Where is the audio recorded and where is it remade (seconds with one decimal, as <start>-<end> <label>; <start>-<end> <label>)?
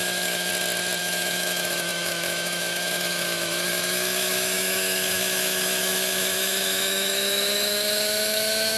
0.0-0.5 remade; 0.5-1.0 recorded; 1.0-8.8 remade